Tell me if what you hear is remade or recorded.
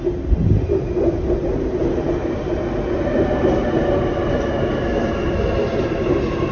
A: recorded